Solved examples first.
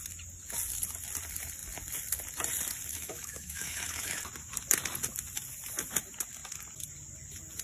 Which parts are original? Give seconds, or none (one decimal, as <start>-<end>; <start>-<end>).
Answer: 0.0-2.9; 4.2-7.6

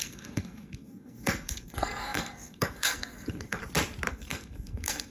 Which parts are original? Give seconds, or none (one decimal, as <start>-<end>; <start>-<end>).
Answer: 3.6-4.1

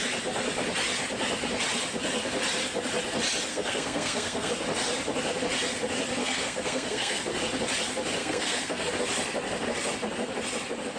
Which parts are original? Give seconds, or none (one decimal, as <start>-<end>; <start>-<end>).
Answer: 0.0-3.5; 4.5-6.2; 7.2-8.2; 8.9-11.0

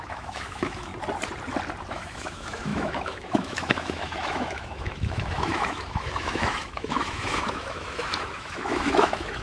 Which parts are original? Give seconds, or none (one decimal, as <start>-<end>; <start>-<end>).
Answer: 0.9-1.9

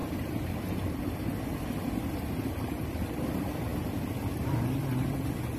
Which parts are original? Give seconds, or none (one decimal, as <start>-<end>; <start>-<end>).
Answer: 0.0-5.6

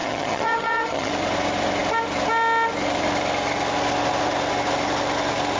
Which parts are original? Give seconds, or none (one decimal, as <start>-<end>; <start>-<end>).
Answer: 1.1-5.6

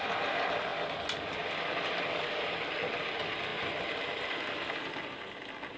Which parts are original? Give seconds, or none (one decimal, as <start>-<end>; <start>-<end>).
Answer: 0.0-5.8